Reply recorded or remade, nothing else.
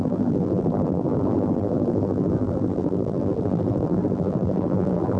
remade